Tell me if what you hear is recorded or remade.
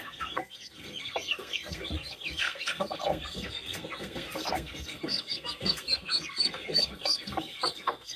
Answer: remade